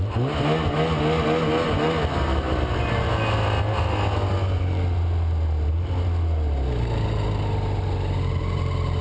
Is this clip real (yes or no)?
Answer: yes